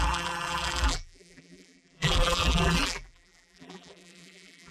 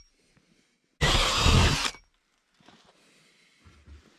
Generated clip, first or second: first